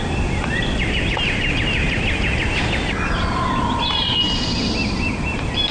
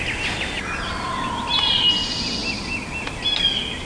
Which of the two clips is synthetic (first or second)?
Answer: first